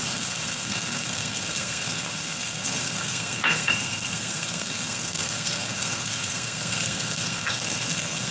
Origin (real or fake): fake